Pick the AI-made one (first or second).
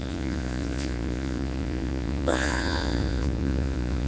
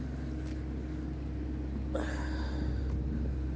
first